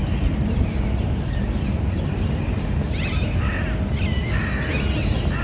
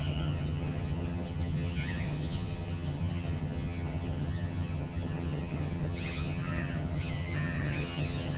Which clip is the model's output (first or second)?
second